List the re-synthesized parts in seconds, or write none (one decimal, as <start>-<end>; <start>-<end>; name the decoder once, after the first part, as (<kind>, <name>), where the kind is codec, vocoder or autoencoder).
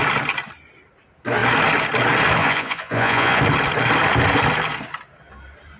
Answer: 2.4-3.4 (vocoder, Vocos)